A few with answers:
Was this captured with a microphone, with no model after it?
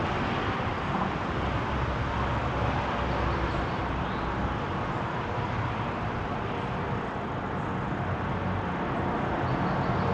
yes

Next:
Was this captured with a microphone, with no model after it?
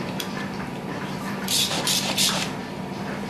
no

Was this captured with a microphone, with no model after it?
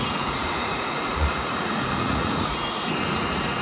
no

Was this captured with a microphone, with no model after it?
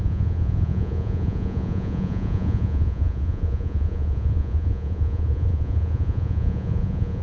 no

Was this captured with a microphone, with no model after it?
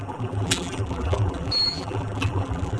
no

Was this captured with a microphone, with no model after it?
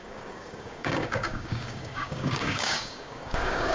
no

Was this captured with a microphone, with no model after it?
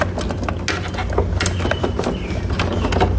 yes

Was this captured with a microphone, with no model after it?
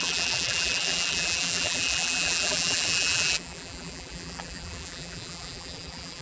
no